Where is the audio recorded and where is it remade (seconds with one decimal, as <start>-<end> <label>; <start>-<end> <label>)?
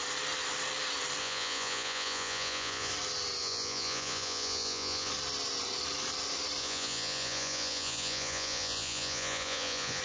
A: 0.0-1.2 recorded; 1.2-2.9 remade; 2.9-3.4 recorded; 3.4-5.1 remade; 5.1-6.6 recorded; 6.6-10.0 remade